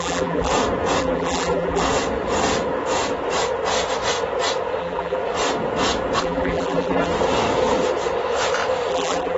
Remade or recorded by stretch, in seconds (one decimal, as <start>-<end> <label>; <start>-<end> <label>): 0.0-0.5 remade; 0.5-1.0 recorded; 1.0-1.8 remade; 1.8-4.8 recorded; 4.8-5.2 remade; 5.2-6.2 recorded; 6.2-7.1 remade; 7.1-8.9 recorded; 8.9-9.4 remade